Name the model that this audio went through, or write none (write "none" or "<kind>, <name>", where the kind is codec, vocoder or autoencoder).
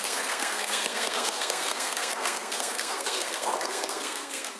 codec, SNAC